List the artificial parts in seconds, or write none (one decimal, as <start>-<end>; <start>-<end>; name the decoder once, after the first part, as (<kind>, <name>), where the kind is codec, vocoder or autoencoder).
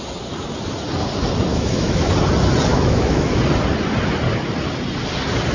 1.5-2.1 (autoencoder, DAC-VAE); 2.7-3.4